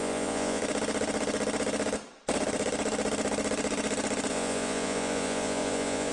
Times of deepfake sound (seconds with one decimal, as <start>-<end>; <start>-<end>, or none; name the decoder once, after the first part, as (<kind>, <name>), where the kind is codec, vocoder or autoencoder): 0.0-0.6 (vocoder, Vocos); 4.3-6.1

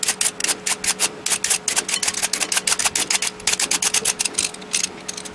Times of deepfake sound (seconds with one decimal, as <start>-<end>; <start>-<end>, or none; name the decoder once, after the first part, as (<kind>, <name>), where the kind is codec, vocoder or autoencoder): none

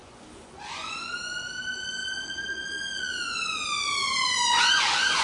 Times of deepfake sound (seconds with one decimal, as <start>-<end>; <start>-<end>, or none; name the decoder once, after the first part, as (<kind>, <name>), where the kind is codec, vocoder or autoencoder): 0.0-5.2 (vocoder, Vocos)